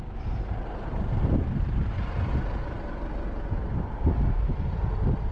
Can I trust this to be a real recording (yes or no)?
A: yes